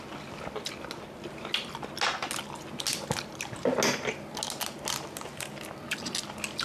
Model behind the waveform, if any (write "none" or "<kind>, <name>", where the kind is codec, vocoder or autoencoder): none